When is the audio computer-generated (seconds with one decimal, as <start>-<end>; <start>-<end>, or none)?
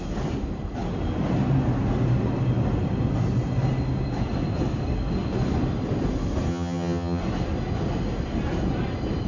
6.5-7.2